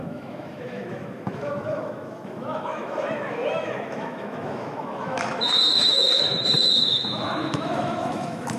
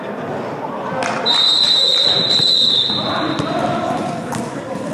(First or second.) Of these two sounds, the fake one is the first